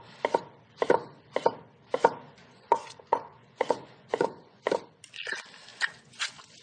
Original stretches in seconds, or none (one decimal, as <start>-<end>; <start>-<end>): 0.0-2.4; 4.7-5.7